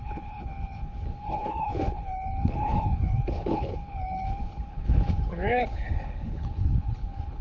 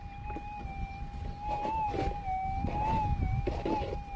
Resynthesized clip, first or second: first